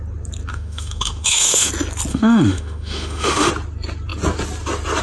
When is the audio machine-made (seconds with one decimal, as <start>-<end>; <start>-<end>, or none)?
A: 0.5-1.7; 2.1-3.5